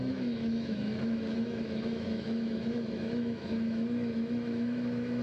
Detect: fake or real fake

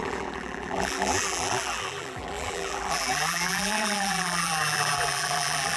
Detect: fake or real fake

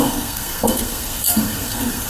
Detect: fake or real fake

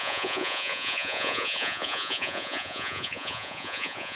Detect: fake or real fake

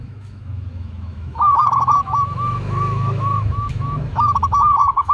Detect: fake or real fake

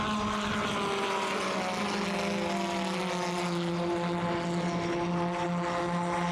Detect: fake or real real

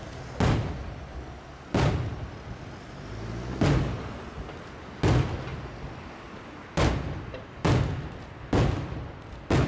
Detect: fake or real real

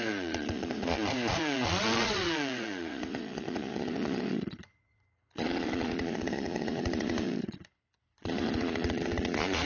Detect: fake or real fake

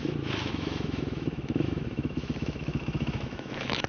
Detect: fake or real fake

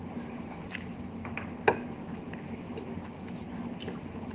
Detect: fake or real real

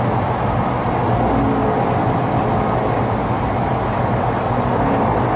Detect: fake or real real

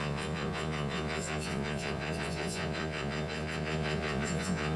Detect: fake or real fake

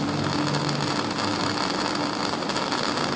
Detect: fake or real real